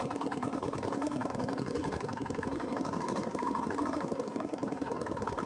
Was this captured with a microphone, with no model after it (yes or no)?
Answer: no